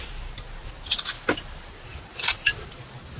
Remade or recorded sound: recorded